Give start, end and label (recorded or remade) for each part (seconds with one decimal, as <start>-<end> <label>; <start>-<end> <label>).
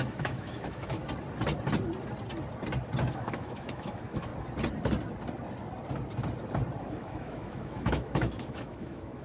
0.0-1.0 remade; 1.0-3.1 recorded; 3.1-4.3 remade; 4.3-6.8 recorded; 6.8-9.2 remade